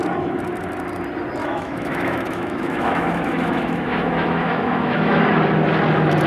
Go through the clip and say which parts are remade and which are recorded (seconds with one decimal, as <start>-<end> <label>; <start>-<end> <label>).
0.0-1.4 recorded; 1.4-5.2 remade; 5.2-6.3 recorded